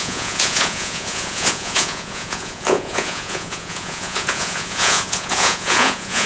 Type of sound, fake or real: fake